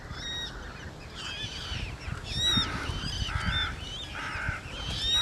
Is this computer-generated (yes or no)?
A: no